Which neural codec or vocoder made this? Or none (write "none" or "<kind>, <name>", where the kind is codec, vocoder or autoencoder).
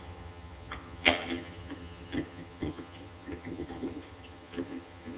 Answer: vocoder, HiFi-GAN